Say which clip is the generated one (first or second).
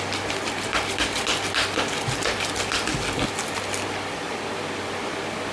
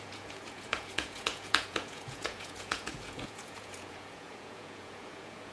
second